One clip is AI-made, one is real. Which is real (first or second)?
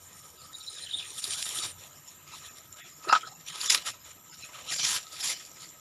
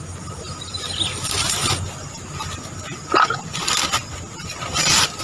second